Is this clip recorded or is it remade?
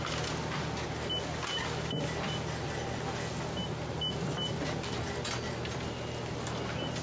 recorded